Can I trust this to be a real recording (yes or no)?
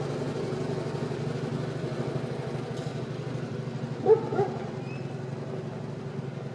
yes